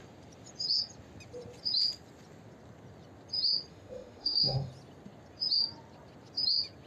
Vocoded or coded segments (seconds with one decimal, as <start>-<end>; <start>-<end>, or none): 3.7-4.7